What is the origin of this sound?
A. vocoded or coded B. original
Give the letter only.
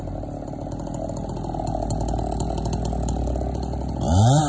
B